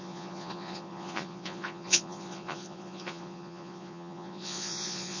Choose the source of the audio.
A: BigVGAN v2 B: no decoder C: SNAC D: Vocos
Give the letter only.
D